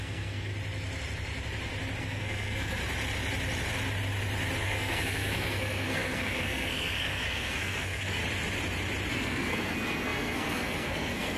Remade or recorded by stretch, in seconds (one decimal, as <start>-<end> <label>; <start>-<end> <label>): 0.0-0.5 remade; 0.5-2.0 recorded; 2.0-2.8 remade; 2.8-4.6 recorded; 4.6-8.2 remade; 8.2-9.1 recorded; 9.1-11.4 remade